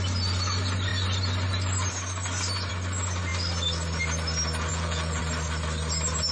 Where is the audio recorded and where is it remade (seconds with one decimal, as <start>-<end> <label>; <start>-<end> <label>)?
0.0-4.7 recorded; 4.7-5.2 remade; 5.2-6.3 recorded